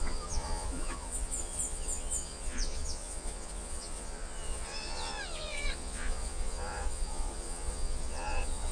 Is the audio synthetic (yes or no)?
yes